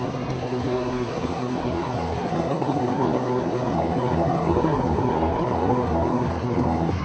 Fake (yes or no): yes